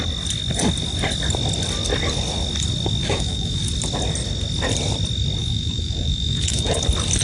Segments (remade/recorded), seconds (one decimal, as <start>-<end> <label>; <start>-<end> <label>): 0.0-3.0 recorded; 3.0-3.7 remade; 3.7-5.4 recorded; 5.4-6.8 remade; 6.8-7.2 recorded